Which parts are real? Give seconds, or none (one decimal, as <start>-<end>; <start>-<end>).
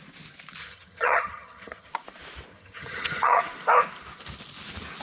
0.0-0.6; 1.9-2.5; 3.4-5.0